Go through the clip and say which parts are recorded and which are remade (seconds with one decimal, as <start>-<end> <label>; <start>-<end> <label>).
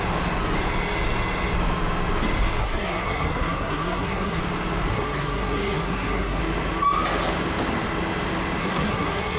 0.0-2.6 recorded; 2.6-4.4 remade; 4.4-4.9 recorded; 4.9-6.4 remade; 6.4-8.6 recorded; 8.6-9.4 remade